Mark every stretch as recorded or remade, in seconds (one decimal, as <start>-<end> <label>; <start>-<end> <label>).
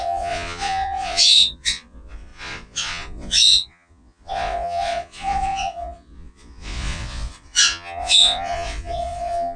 0.0-9.6 remade